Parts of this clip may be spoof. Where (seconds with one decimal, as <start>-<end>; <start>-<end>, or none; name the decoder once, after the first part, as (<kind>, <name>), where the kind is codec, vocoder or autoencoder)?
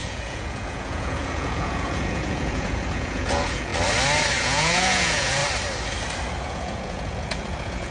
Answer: 0.0-3.7 (vocoder, Vocos); 4.4-5.4; 6.4-7.9